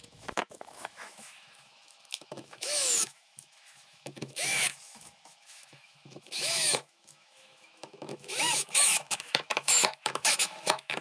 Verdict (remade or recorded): remade